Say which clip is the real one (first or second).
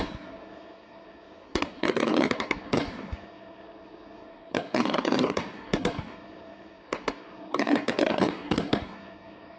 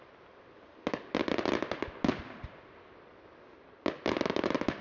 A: second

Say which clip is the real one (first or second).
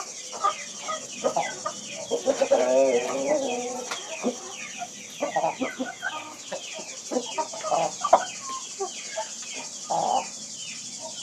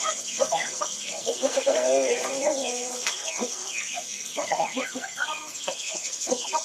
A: first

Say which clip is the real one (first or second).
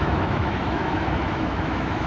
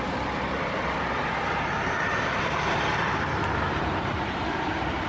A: second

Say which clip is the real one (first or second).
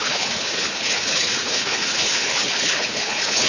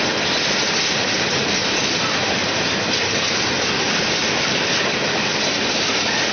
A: second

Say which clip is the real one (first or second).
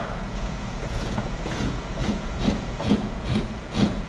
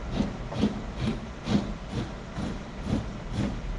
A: second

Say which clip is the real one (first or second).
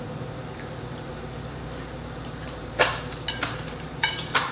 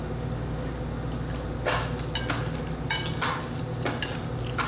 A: second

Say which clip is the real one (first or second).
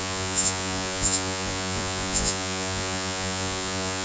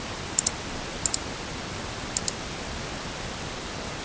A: second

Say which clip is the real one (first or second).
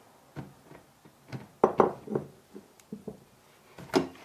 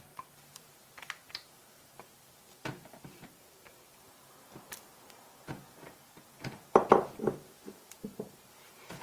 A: first